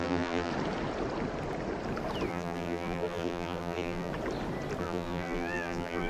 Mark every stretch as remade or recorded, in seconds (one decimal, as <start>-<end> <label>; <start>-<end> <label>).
0.0-0.5 remade; 0.5-2.3 recorded; 2.3-4.1 remade; 4.1-4.8 recorded; 4.8-6.1 remade